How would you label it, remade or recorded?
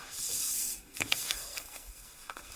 remade